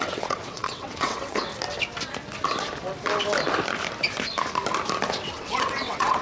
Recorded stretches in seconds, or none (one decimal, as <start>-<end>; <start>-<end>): 1.5-5.2